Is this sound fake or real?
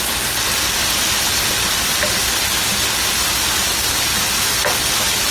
real